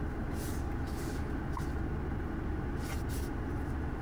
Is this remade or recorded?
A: recorded